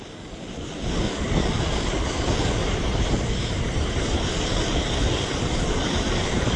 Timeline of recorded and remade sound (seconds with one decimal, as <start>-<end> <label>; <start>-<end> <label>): 0.0-2.6 recorded; 2.6-4.3 remade; 4.3-6.6 recorded